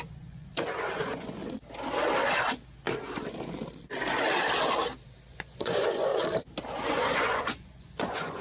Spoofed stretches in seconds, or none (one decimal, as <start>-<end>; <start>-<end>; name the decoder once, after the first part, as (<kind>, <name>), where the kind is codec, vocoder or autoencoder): 0.0-1.4 (vocoder, Vocos); 5.3-6.1; 6.9-8.4